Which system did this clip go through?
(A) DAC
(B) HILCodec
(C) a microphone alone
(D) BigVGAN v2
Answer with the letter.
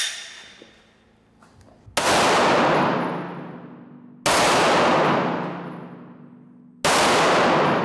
C